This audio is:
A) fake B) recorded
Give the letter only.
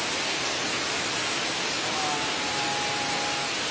B